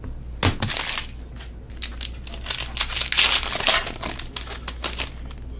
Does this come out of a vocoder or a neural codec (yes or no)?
no